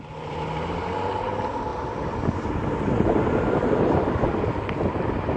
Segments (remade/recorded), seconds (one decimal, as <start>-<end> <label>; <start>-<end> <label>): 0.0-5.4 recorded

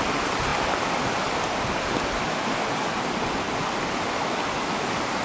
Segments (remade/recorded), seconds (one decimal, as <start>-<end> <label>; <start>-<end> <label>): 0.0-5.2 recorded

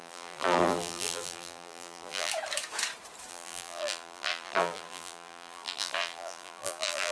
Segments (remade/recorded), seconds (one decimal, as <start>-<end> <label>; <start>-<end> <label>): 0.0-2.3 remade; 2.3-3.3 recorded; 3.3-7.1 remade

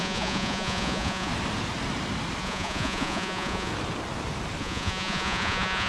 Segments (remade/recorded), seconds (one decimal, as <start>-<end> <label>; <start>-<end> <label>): 0.0-1.3 remade; 1.3-2.4 recorded; 2.4-3.7 remade; 3.7-4.6 recorded; 4.6-5.9 remade